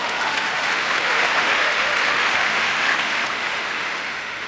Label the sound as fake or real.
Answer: fake